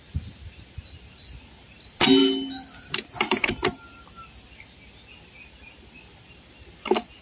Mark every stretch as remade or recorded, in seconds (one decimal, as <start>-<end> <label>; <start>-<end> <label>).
0.0-7.2 recorded